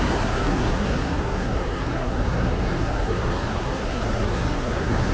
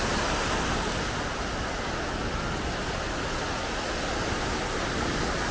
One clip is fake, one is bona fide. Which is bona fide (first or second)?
second